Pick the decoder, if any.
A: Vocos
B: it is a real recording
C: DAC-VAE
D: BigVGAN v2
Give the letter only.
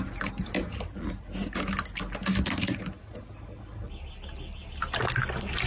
B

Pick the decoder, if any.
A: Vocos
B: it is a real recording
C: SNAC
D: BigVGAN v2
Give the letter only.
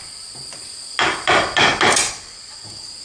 D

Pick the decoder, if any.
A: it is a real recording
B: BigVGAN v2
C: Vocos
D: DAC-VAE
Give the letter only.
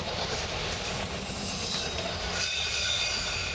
B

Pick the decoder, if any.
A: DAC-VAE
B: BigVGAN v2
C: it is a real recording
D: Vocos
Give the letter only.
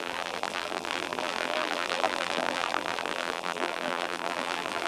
B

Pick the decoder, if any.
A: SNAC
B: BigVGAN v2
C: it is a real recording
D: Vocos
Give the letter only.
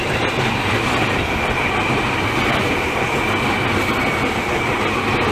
C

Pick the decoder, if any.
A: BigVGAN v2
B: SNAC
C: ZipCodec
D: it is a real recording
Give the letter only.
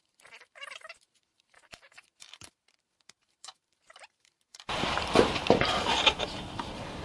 A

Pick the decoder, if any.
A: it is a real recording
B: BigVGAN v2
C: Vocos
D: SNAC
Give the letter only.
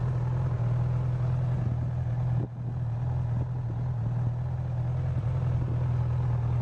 A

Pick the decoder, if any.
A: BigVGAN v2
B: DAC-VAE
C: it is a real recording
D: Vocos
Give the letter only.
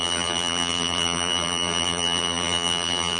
A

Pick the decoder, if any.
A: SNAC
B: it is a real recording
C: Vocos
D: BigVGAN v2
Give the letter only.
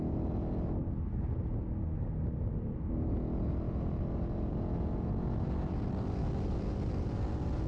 B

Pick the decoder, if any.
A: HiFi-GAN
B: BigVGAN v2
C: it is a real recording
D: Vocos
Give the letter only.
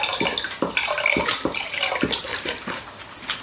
C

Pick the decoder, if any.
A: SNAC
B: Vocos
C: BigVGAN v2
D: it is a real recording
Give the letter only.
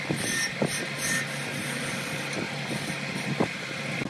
D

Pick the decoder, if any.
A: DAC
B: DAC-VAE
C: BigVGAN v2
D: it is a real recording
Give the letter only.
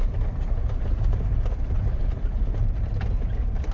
C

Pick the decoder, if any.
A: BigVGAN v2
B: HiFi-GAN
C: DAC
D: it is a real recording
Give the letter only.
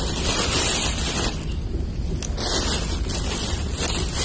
D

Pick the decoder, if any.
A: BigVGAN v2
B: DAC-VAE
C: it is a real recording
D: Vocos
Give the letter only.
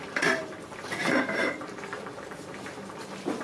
A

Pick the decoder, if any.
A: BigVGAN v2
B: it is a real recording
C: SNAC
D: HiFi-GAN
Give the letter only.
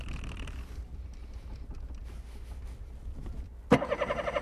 B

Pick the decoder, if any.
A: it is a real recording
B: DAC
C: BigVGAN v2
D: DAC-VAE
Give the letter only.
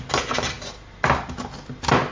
A